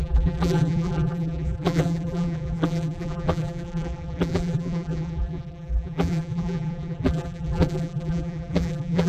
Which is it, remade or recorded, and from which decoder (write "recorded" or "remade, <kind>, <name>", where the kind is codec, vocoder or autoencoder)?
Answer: remade, vocoder, BigVGAN v2